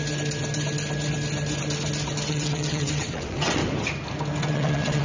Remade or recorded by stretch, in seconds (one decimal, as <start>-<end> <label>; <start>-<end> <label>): 0.0-2.3 recorded; 2.3-3.6 remade; 3.6-4.5 recorded; 4.5-5.0 remade